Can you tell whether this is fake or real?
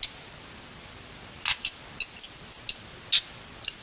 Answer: real